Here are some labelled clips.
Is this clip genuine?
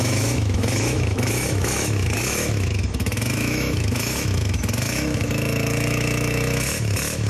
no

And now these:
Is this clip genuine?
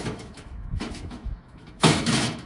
no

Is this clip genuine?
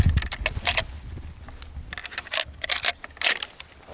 yes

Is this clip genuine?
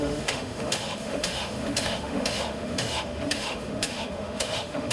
no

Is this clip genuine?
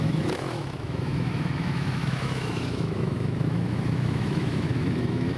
no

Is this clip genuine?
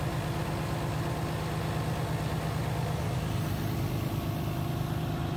yes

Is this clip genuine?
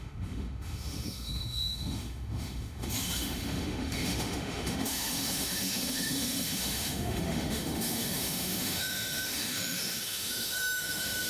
no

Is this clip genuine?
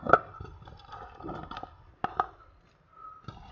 yes